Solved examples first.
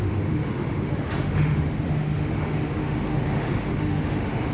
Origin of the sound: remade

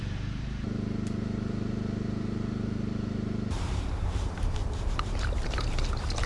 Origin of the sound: remade